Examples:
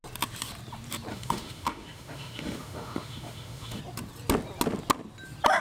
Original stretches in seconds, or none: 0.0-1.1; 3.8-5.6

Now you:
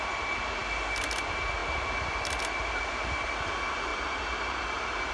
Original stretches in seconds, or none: 0.0-5.1

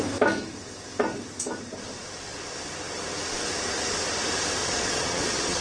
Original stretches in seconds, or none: 0.0-4.6

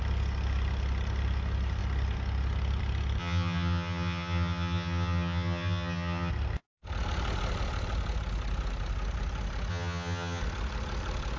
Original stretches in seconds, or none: 0.0-3.2; 6.3-9.7; 10.4-11.4

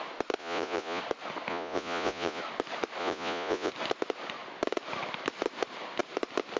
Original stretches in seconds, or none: 0.0-0.4; 1.0-1.5; 2.4-3.0; 3.7-6.6

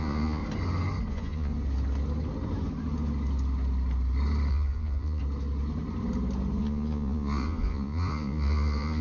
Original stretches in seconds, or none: 0.4-1.1; 1.5-4.5; 5.2-6.6

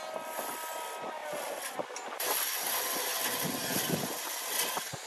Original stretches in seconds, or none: 0.0-5.1